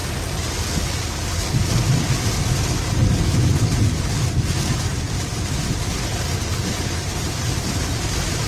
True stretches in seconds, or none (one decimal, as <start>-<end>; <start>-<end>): 0.0-4.9; 8.0-8.5